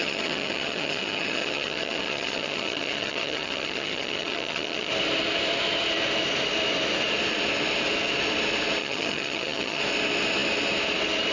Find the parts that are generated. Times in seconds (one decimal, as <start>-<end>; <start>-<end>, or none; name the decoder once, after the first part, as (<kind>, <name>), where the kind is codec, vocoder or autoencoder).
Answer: 0.0-4.9 (vocoder, HiFi-GAN); 8.8-9.8